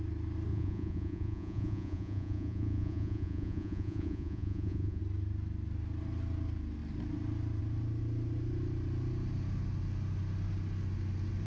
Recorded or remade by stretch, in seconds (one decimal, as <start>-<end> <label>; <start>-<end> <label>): 0.0-0.5 recorded; 0.5-5.0 remade; 5.0-11.5 recorded